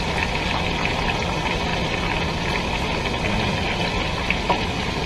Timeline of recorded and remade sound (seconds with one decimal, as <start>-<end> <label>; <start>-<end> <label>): 0.0-5.1 recorded